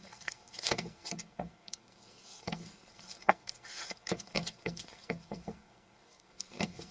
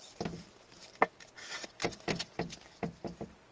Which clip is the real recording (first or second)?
second